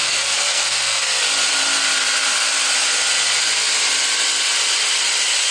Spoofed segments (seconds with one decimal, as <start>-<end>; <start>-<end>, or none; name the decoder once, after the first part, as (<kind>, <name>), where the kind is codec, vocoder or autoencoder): 0.0-1.2 (codec, SNAC)